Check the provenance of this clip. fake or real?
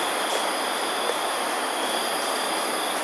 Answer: real